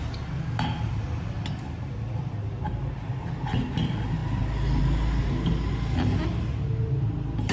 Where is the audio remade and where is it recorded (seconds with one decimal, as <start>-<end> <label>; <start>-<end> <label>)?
0.0-7.5 recorded